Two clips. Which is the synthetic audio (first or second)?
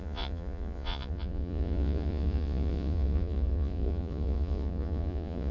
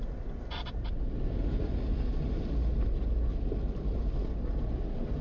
first